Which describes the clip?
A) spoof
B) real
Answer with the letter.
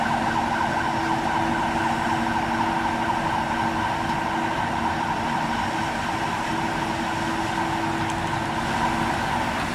B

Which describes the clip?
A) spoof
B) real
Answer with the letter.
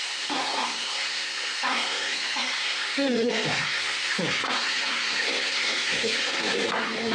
A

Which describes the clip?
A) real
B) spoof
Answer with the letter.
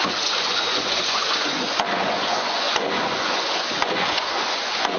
B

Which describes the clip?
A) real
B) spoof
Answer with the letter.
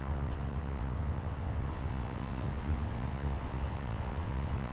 B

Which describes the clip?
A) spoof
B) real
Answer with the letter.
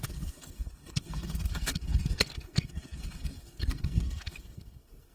A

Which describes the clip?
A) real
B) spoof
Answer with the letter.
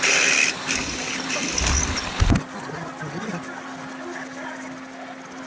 A